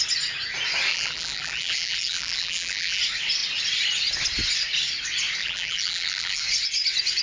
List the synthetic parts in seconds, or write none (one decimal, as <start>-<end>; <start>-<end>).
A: 0.9-3.0; 5.4-6.4